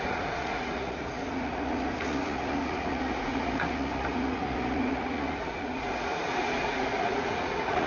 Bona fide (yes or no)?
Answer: no